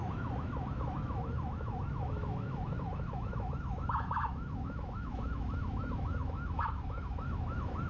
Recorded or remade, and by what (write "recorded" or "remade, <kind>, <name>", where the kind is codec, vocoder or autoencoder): remade, autoencoder, DAC-VAE